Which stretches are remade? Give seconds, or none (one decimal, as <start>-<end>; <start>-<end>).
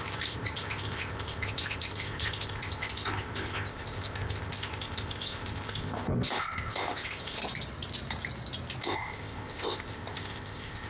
0.0-7.4; 8.8-10.9